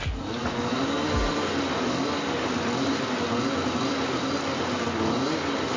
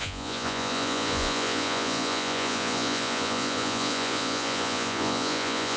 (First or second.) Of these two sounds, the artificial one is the second